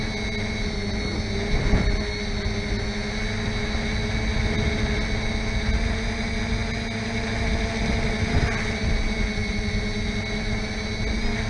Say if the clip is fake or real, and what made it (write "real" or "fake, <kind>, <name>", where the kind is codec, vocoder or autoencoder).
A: real